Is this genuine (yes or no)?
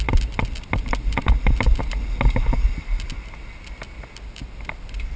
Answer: yes